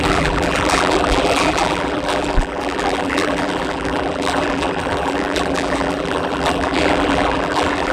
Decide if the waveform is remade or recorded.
remade